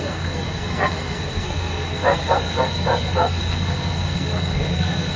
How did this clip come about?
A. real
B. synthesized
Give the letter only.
B